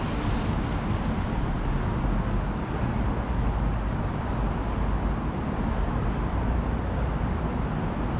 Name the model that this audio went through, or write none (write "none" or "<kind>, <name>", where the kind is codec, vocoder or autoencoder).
none